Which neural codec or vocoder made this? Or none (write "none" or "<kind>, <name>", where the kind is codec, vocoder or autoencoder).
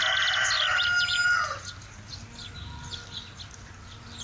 none